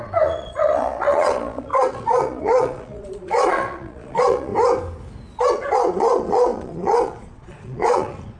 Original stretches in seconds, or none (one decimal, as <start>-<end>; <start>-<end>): 4.5-5.4